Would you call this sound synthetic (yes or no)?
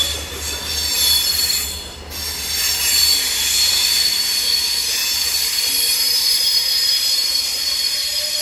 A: yes